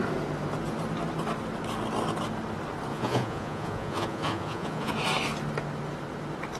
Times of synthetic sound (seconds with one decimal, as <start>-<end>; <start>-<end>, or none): 2.9-4.9